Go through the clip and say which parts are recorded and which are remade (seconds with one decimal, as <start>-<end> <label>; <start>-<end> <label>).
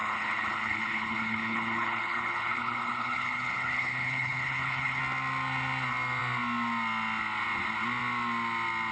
0.0-5.0 remade; 5.0-8.9 recorded